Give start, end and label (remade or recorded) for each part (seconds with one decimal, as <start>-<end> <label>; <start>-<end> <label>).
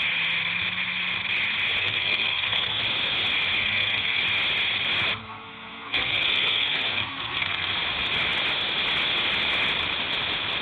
0.0-1.8 recorded; 1.8-2.8 remade; 2.8-3.6 recorded; 3.6-4.2 remade; 4.2-5.2 recorded; 5.2-7.7 remade; 7.7-10.6 recorded